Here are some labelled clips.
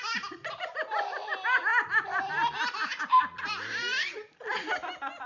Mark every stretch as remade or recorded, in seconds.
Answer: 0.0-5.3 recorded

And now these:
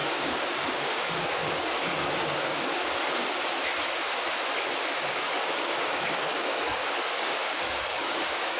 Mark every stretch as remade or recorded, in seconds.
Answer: 0.0-2.8 remade; 2.8-5.1 recorded; 5.1-8.6 remade

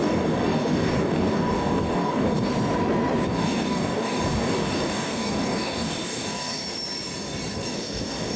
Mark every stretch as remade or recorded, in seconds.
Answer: 0.0-2.5 remade; 2.5-3.3 recorded; 3.3-6.6 remade; 6.6-7.6 recorded; 7.6-8.4 remade

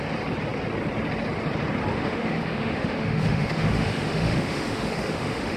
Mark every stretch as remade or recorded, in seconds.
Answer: 0.0-1.9 recorded; 1.9-5.6 remade

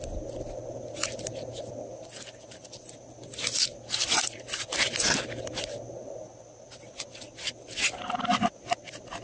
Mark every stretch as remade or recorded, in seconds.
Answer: 0.0-9.2 recorded

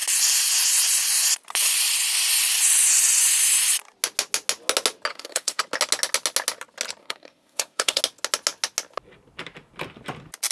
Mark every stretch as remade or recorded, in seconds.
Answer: 0.0-5.1 recorded; 5.1-5.6 remade; 5.6-7.0 recorded; 7.0-8.0 remade; 8.0-10.5 recorded